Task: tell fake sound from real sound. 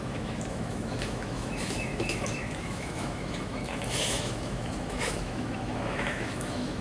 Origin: fake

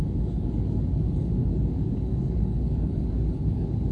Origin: fake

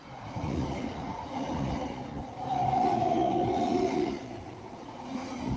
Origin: fake